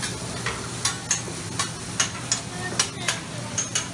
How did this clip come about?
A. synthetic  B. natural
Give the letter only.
B